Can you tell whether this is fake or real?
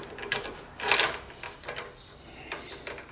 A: real